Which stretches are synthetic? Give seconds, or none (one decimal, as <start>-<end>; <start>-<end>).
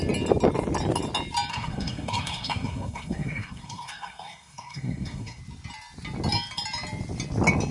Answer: 1.5-5.4